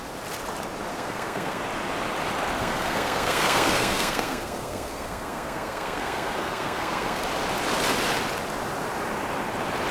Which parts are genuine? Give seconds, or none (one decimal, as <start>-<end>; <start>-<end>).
0.0-0.9; 1.6-2.6; 7.2-9.9